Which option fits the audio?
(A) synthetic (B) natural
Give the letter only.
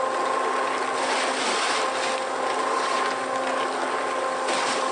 B